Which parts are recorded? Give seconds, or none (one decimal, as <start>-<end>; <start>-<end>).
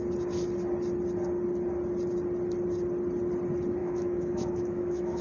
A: 0.0-3.8